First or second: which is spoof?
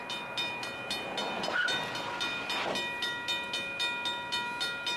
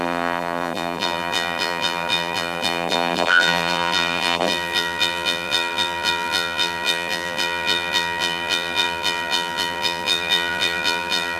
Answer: second